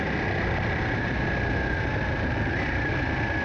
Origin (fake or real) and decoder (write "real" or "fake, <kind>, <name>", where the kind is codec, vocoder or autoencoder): real